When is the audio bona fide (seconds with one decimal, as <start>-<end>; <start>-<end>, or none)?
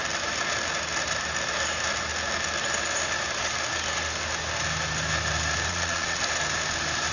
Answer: 0.0-5.7; 6.2-7.1